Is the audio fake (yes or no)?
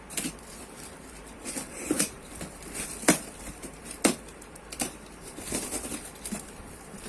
yes